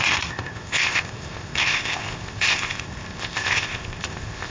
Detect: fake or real fake